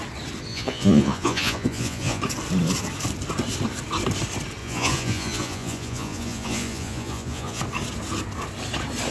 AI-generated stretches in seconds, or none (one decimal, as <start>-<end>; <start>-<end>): 0.5-2.2; 4.6-7.6